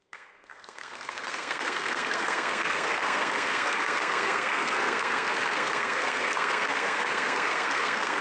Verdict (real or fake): fake